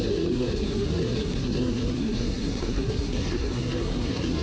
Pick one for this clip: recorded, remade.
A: remade